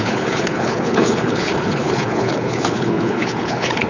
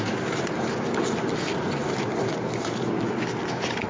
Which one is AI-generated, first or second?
first